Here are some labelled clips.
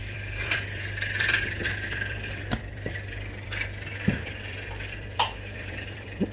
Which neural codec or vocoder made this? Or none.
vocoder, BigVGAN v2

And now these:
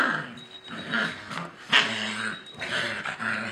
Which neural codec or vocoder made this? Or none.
vocoder, BigVGAN v2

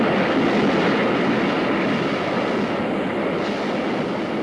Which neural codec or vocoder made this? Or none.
none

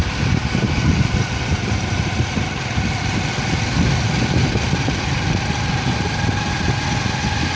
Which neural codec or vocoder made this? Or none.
none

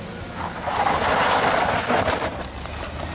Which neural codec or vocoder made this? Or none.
none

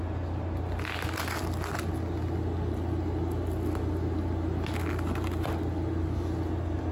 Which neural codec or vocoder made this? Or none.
none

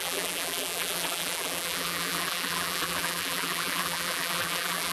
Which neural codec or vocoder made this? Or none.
vocoder, BigVGAN v2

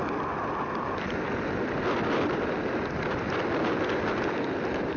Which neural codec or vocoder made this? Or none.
none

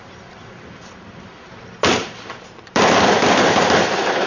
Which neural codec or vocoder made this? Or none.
vocoder, BigVGAN v2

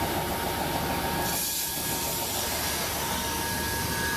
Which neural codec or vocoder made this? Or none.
none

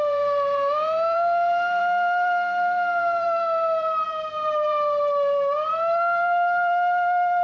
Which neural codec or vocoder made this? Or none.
vocoder, BigVGAN v2